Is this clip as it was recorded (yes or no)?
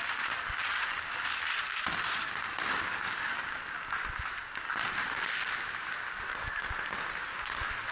yes